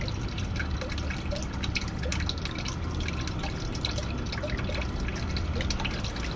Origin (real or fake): real